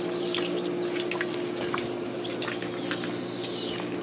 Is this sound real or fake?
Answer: real